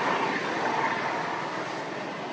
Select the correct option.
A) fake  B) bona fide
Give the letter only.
B